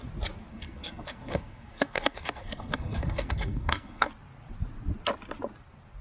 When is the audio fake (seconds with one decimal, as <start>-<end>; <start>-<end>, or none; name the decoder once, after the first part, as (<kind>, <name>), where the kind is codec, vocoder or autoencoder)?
0.5-4.1 (codec, SNAC)